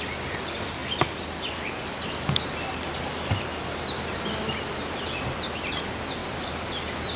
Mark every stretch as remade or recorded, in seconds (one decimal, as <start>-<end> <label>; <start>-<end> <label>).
0.0-7.2 recorded